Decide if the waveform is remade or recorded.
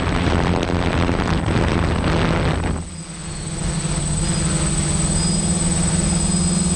recorded